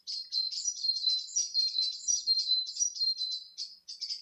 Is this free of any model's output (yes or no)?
yes